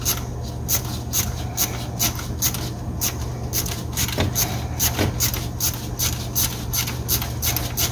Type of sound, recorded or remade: recorded